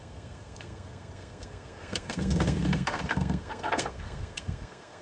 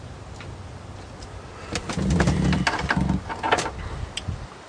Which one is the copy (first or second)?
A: first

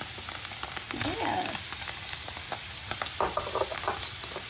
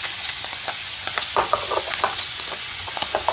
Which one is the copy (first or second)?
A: second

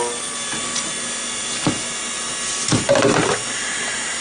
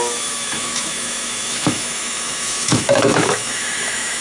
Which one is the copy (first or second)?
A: second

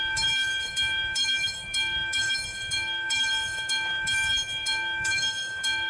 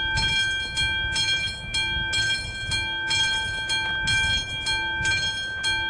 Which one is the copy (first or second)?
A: first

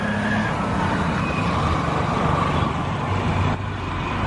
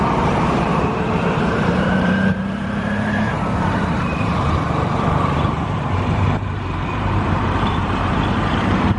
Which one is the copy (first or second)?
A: second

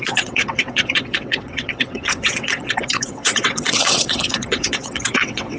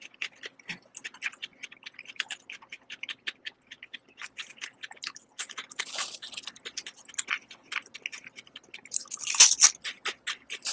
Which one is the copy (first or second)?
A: first